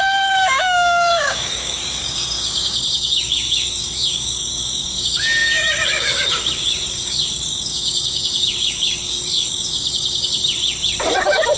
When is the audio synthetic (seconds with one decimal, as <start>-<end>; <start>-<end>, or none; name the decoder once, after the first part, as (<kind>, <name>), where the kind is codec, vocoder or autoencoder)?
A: 0.0-10.4 (codec, DAC)